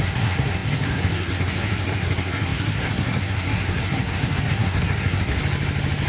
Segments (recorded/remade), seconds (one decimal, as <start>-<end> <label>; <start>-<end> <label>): 0.0-5.4 remade; 5.4-6.1 recorded